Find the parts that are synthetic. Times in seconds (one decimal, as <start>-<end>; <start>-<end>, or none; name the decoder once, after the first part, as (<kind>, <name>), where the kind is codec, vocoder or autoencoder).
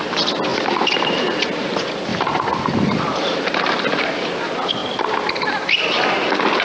2.1-4.0 (vocoder, BigVGAN v2)